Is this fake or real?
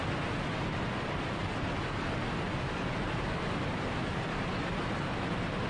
real